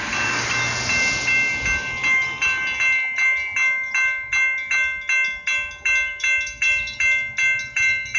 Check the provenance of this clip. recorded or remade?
recorded